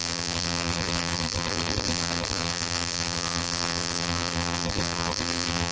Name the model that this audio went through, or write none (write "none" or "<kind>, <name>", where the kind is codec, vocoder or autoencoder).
vocoder, BigVGAN v2